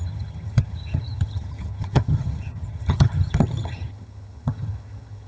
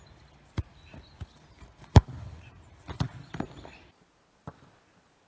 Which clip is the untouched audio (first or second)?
second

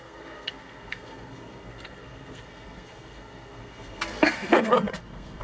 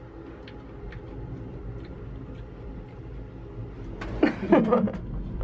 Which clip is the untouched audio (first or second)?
second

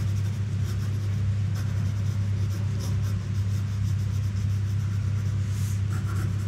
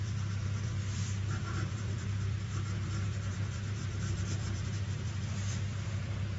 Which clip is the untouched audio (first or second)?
first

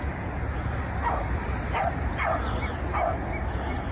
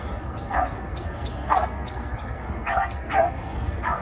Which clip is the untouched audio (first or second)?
first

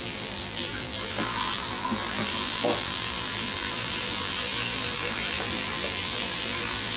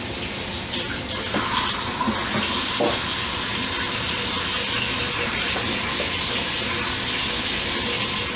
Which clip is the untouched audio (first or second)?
second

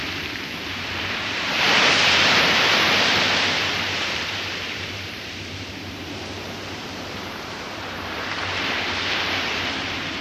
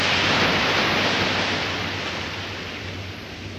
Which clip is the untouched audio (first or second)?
second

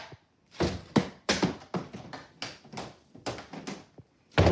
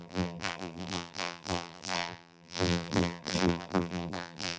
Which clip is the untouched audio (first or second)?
first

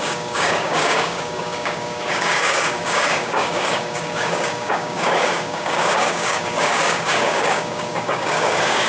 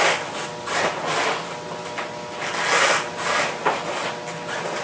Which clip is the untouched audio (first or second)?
second